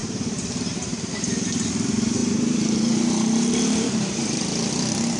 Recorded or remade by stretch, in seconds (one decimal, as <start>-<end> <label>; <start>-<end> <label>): 0.0-1.1 remade; 1.1-2.2 recorded; 2.2-4.4 remade; 4.4-5.2 recorded